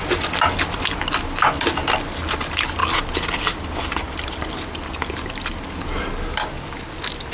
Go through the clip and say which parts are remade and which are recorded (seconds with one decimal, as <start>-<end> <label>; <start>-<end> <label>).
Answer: 0.0-7.3 recorded